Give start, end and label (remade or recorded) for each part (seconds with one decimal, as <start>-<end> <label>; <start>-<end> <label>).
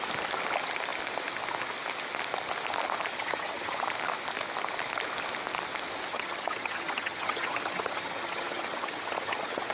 0.0-3.1 recorded; 3.1-3.8 remade; 3.8-6.1 recorded; 6.1-9.7 remade